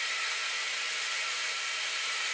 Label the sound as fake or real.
real